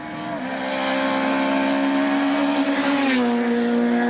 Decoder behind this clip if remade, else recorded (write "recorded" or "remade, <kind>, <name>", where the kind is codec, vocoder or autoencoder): recorded